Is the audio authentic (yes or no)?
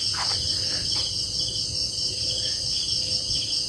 yes